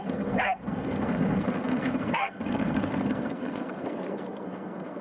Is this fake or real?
fake